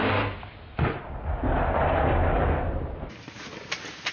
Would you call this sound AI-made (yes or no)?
no